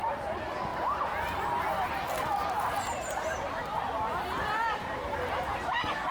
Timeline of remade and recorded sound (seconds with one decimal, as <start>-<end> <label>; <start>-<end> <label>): 0.0-0.7 recorded; 0.7-1.9 remade; 1.9-6.1 recorded